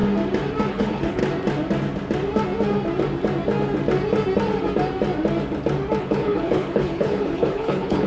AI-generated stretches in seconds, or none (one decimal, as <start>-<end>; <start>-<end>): 0.7-1.2; 6.0-8.1